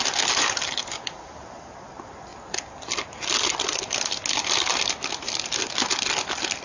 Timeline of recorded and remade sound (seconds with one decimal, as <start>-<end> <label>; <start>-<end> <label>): 0.0-6.6 recorded